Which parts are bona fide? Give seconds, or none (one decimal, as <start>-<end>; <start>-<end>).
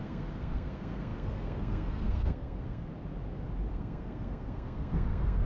2.9-3.7